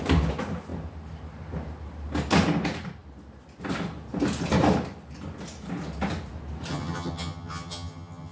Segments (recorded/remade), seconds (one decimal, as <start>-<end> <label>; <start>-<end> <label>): 0.0-6.7 recorded; 6.7-8.3 remade